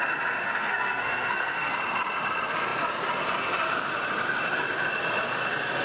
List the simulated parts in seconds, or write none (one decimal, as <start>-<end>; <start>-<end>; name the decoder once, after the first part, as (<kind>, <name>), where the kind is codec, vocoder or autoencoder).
0.4-1.8 (codec, SNAC)